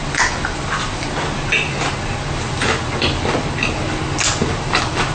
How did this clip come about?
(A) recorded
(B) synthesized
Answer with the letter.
A